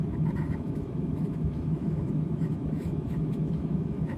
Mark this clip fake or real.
fake